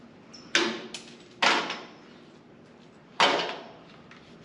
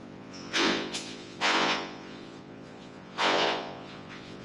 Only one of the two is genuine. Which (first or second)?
first